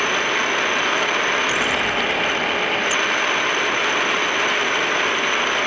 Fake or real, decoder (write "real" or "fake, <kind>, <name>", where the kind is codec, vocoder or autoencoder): real